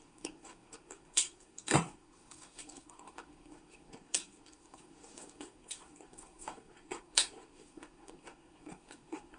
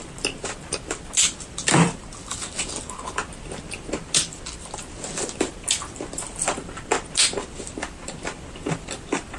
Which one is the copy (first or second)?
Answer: first